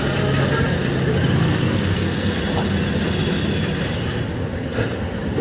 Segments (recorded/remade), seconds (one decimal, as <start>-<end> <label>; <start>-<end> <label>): 0.0-1.4 recorded; 1.4-2.4 remade; 2.4-5.4 recorded